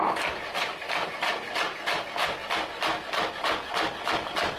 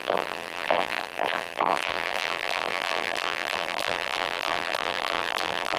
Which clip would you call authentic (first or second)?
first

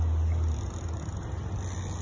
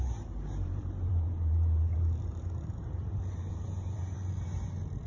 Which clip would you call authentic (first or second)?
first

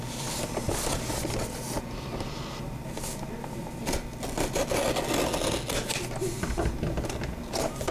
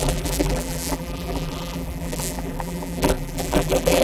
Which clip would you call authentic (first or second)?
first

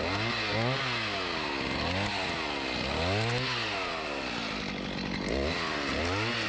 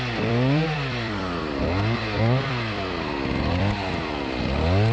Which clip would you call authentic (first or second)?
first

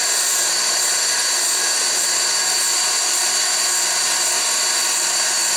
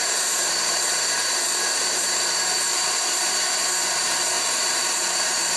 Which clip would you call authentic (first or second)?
first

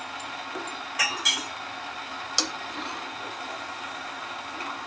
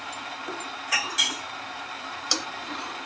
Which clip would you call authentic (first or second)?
first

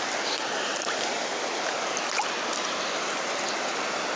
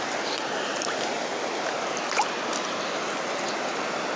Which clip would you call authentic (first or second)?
second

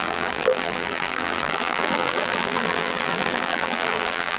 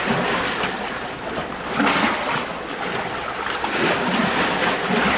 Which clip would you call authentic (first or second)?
second